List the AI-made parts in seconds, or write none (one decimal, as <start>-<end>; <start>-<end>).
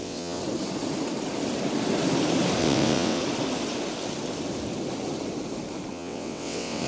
0.0-0.4; 2.6-3.2; 5.9-6.9